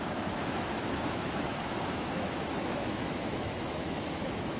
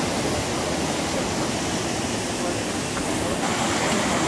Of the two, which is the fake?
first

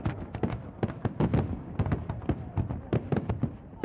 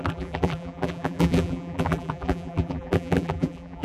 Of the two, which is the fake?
second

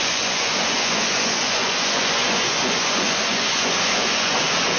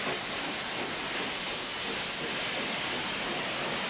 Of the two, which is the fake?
first